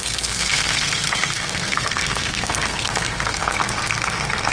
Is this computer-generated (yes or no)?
yes